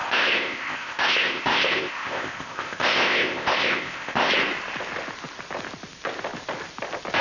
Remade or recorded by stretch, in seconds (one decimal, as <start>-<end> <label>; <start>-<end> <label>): 0.0-4.3 remade; 4.3-7.2 recorded